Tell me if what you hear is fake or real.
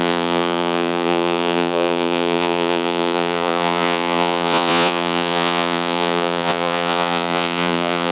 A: fake